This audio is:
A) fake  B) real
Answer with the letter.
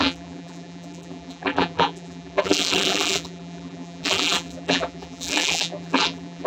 A